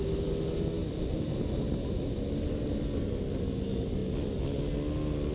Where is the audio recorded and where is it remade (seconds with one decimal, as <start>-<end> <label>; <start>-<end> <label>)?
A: 0.0-0.8 recorded; 0.8-1.6 remade; 1.6-5.3 recorded